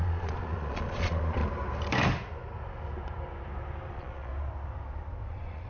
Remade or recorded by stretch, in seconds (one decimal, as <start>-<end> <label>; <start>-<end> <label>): 0.0-1.4 remade; 1.4-3.9 recorded; 3.9-4.3 remade; 4.3-5.3 recorded; 5.3-5.7 remade